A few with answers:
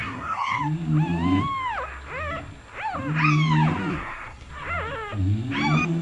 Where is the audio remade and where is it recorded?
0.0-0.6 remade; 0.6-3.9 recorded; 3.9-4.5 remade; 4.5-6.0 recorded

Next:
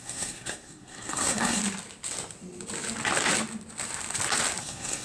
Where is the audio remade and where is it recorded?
0.0-1.6 remade; 1.6-4.6 recorded; 4.6-5.0 remade

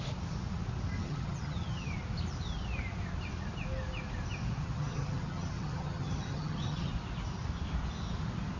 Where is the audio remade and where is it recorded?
0.0-1.0 recorded; 1.0-1.9 remade; 1.9-4.6 recorded; 4.6-6.9 remade; 6.9-8.6 recorded

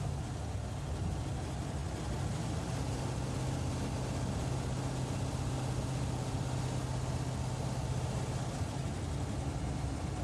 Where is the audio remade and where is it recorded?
0.0-10.2 recorded

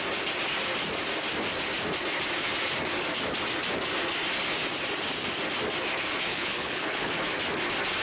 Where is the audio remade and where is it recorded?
0.0-6.3 recorded; 6.3-7.1 remade; 7.1-8.0 recorded

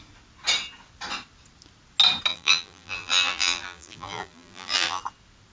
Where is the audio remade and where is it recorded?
0.0-2.3 recorded; 2.3-5.0 remade; 5.0-5.5 recorded

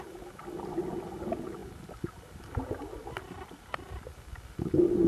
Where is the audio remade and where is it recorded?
0.0-5.1 recorded

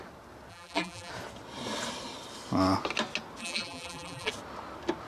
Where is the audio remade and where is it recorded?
0.0-0.5 recorded; 0.5-1.1 remade; 1.1-3.4 recorded; 3.4-4.3 remade; 4.3-5.1 recorded